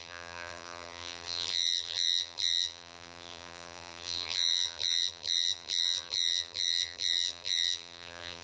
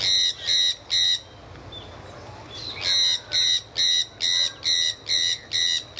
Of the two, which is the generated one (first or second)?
first